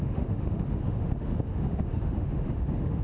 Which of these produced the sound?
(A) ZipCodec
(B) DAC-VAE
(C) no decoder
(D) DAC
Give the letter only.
B